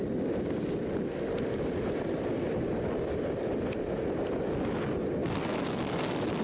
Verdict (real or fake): real